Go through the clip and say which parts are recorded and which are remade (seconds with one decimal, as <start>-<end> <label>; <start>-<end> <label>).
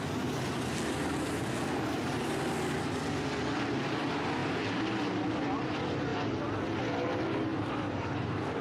0.0-4.4 recorded; 4.4-5.0 remade; 5.0-7.5 recorded; 7.5-8.6 remade